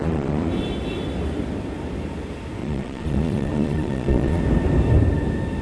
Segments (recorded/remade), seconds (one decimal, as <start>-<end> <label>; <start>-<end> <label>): 0.0-0.5 remade; 0.5-2.6 recorded; 2.6-4.4 remade; 4.4-5.6 recorded